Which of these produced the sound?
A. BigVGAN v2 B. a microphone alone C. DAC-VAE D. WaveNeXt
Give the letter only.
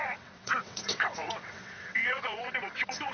D